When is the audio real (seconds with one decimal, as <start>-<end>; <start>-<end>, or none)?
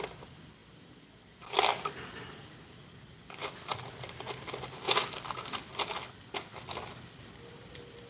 0.0-8.1